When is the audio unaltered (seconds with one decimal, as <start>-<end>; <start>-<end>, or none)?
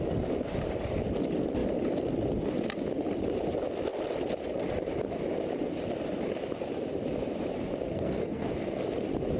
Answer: 0.0-7.9; 8.5-9.4